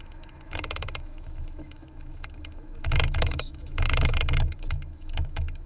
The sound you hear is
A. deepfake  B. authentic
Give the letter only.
A